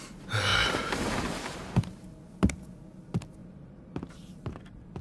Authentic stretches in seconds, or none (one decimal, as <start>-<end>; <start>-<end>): 0.0-0.5; 2.3-3.4; 4.2-5.0